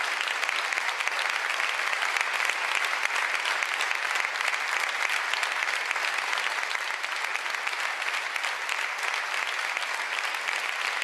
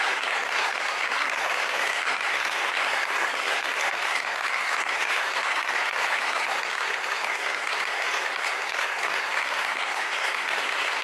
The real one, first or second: first